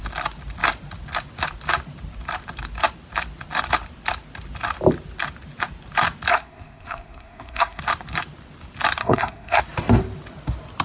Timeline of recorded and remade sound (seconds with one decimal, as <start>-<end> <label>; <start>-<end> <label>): 0.0-6.3 recorded; 6.3-7.8 remade; 7.8-9.0 recorded; 9.0-9.6 remade; 9.6-10.8 recorded